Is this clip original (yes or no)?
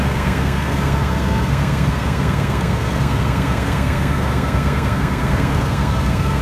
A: no